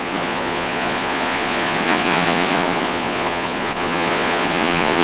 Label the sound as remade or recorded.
remade